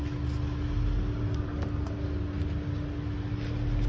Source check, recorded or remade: recorded